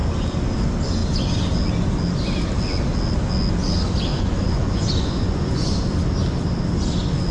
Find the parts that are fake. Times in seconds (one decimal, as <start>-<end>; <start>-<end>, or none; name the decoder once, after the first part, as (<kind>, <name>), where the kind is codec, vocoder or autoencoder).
4.1-5.8 (vocoder, Vocos)